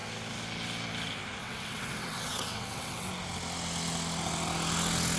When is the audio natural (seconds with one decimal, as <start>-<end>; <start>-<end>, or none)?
0.0-1.4; 3.1-5.2